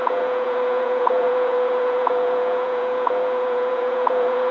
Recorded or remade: remade